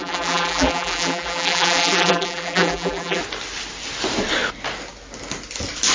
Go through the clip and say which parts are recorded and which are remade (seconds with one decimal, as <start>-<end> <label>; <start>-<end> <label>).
0.0-3.2 remade; 3.2-5.9 recorded